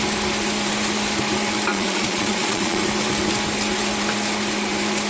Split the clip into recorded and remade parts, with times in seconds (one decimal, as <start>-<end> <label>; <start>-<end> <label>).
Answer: 0.0-1.7 recorded; 1.7-2.8 remade; 2.8-5.1 recorded